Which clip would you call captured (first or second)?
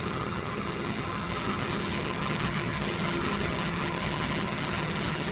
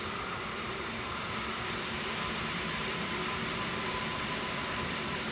second